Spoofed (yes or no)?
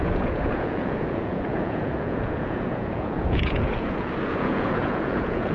yes